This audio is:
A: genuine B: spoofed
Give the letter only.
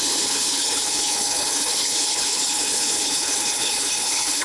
B